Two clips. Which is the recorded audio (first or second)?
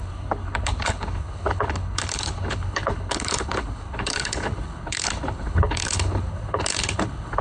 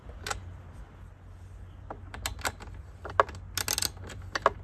second